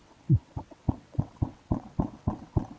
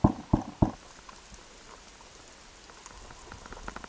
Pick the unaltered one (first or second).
second